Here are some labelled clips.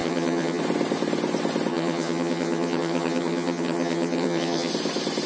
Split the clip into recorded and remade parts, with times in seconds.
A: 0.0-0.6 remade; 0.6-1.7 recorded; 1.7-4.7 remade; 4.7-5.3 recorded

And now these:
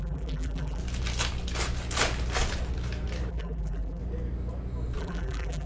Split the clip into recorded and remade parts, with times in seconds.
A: 0.0-0.8 remade; 0.8-3.3 recorded; 3.3-4.0 remade; 4.0-5.0 recorded; 5.0-5.7 remade